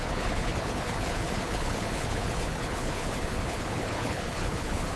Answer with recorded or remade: remade